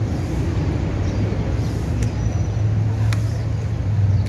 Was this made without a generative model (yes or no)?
yes